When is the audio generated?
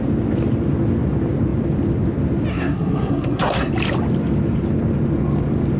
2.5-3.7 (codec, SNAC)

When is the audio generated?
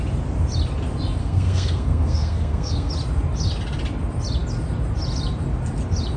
1.2-2.9 (codec, SNAC)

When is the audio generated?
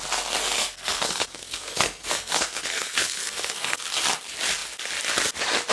0.4-3.8 (codec, SNAC)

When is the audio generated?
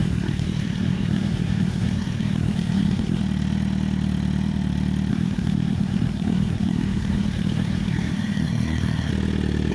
0.0-3.2 (codec, SNAC); 5.1-9.1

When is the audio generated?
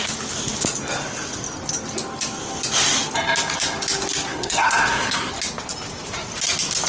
4.3-5.3 (codec, SNAC)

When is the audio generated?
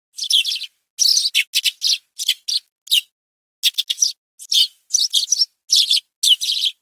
none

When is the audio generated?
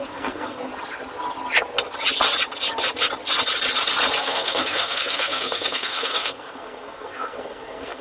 0.0-0.7 (codec, SNAC); 4.2-8.0